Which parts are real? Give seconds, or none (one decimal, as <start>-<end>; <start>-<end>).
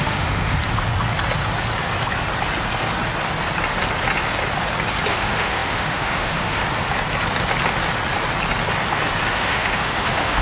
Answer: 0.6-5.1; 6.6-9.3